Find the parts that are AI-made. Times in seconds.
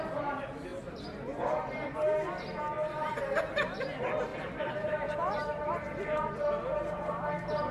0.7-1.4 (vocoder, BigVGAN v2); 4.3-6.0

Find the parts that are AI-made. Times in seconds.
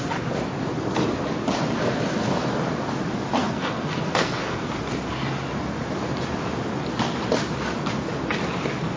3.4-4.7 (codec, SNAC)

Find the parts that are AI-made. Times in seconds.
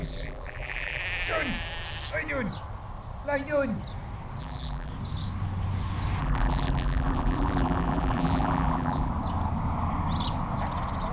0.0-1.0 (vocoder, BigVGAN v2); 4.4-4.9; 6.2-9.1